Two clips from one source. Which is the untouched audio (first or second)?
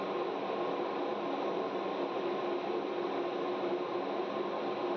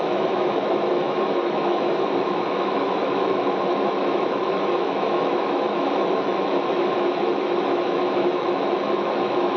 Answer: first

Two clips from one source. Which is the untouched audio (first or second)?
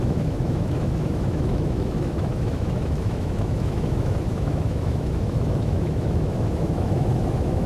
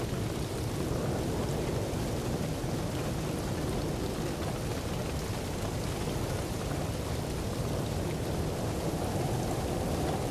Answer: second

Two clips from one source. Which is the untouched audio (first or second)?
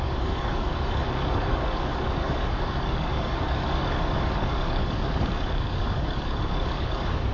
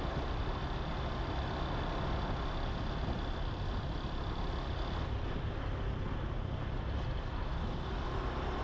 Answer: second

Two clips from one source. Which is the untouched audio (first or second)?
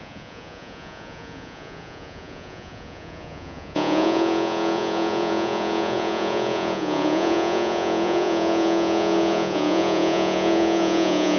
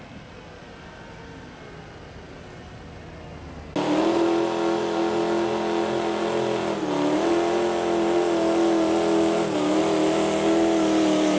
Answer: second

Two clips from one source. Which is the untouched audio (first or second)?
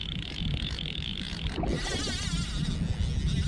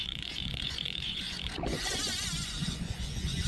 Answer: first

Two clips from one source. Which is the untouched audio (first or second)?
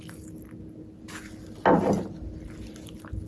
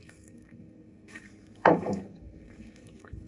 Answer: first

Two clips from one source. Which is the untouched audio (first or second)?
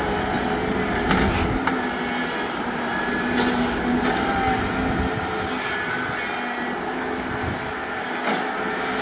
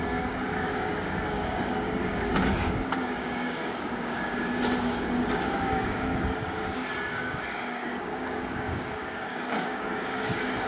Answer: first